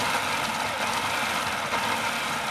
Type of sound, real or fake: real